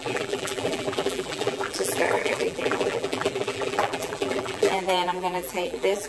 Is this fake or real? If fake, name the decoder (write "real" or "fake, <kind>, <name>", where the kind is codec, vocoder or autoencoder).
fake, vocoder, BigVGAN v2